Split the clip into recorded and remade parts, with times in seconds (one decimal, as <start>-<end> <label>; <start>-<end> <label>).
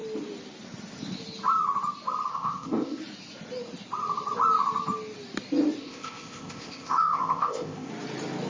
0.0-2.3 recorded; 2.3-3.0 remade; 3.0-5.8 recorded; 5.8-7.9 remade; 7.9-8.5 recorded